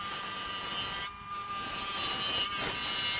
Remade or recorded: recorded